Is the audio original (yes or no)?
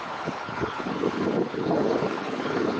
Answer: no